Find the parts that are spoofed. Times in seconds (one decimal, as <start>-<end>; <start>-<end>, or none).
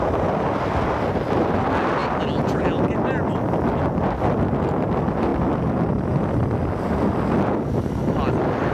none